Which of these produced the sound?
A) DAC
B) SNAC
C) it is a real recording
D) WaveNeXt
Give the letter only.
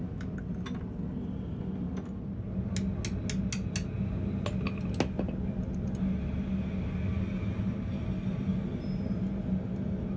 C